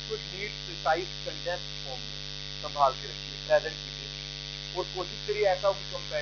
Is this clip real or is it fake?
real